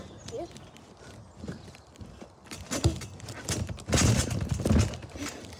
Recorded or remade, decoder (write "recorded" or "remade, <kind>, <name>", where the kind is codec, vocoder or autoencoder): recorded